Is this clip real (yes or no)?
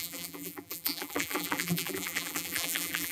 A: no